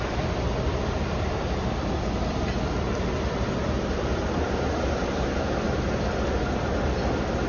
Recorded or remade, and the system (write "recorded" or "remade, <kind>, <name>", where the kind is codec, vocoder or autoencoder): recorded